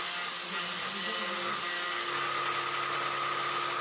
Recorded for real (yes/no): yes